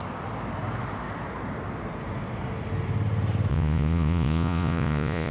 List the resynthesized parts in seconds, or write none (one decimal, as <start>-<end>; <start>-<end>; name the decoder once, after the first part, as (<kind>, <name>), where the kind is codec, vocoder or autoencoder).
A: 3.5-5.3 (vocoder, Vocos)